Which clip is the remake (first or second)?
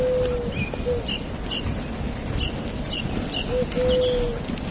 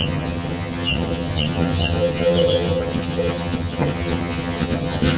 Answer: second